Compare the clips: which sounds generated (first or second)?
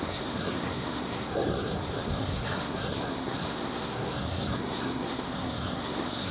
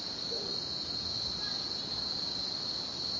first